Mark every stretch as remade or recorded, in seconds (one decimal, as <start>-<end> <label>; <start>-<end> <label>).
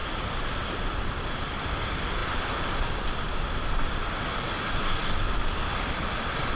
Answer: 0.0-6.6 recorded